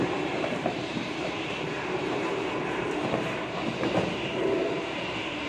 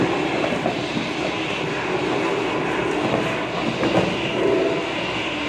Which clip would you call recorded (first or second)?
second